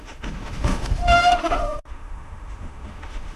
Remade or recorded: remade